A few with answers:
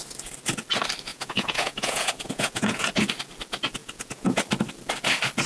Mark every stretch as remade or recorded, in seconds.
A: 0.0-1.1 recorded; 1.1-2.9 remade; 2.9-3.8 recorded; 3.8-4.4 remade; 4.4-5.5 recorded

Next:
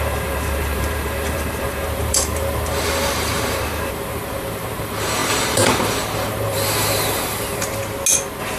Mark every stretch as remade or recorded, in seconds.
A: 0.0-7.8 remade; 7.8-8.6 recorded

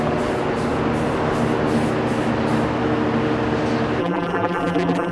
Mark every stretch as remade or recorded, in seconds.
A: 0.0-4.0 recorded; 4.0-5.1 remade

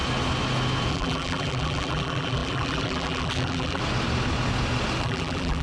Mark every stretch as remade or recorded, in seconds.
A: 0.0-0.9 recorded; 0.9-3.8 remade; 3.8-5.0 recorded; 5.0-5.6 remade

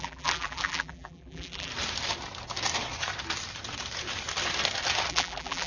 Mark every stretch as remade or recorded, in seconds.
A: 0.0-1.7 remade; 1.7-5.1 recorded; 5.1-5.7 remade

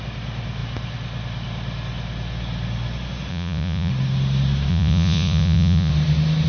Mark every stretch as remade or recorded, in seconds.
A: 0.0-3.3 recorded; 3.3-3.9 remade; 3.9-4.7 recorded; 4.7-5.9 remade; 5.9-6.5 recorded

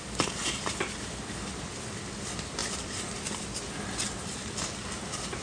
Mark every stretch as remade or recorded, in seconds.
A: 0.0-5.4 recorded